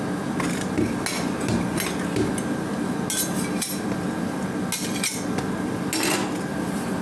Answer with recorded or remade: recorded